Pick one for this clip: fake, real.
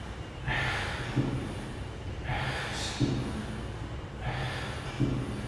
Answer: real